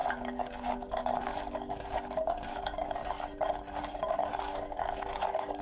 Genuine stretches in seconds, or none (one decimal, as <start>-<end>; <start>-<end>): 3.0-3.9